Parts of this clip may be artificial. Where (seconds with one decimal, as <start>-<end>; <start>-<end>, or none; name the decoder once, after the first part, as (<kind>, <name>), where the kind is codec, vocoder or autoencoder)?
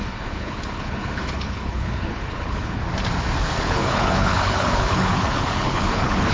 0.0-2.8 (codec, HILCodec); 3.4-6.3